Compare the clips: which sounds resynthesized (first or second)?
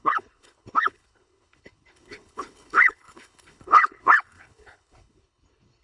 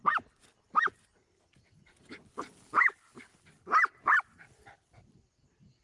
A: first